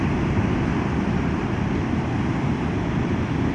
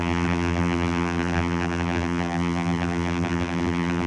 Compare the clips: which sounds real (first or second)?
first